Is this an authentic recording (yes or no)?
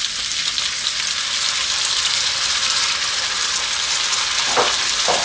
yes